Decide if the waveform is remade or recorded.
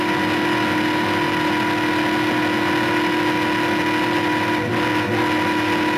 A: recorded